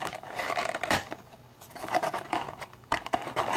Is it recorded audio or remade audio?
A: remade